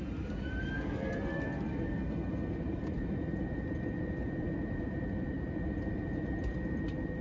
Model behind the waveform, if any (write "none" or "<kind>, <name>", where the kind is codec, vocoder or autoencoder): vocoder, BigVGAN v2